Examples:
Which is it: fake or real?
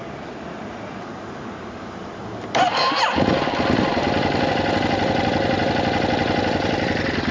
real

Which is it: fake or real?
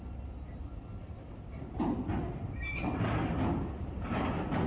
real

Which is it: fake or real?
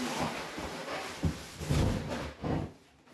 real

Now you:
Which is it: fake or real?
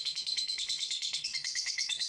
fake